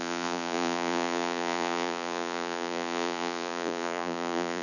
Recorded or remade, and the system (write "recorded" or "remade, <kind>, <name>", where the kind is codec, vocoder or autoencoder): remade, vocoder, Vocos